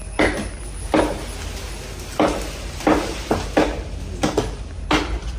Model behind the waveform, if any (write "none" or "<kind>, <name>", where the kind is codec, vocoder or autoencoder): none